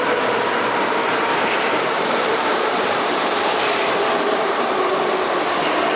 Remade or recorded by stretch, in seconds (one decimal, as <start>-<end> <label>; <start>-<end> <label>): 0.0-1.3 recorded; 1.3-4.9 remade; 4.9-6.0 recorded